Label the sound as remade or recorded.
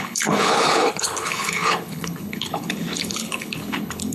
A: remade